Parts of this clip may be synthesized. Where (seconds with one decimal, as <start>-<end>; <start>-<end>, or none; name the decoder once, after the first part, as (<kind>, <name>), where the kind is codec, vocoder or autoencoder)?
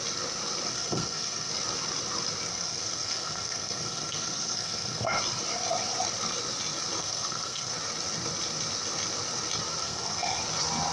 0.7-1.5 (codec, SNAC); 2.5-5.2; 7.0-7.7; 9.8-10.4